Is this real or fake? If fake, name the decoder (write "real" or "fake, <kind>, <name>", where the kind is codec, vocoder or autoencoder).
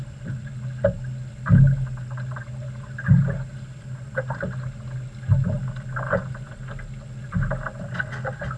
real